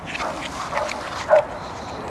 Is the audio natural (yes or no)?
yes